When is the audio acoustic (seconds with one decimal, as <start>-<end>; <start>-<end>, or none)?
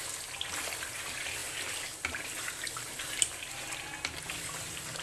0.0-5.0